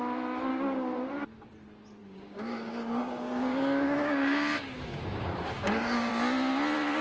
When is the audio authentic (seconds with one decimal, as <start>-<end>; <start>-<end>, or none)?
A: 0.0-0.5; 1.1-2.0; 6.1-7.0